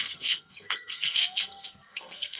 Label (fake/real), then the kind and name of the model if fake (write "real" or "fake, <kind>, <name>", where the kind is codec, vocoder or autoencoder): fake, codec, SNAC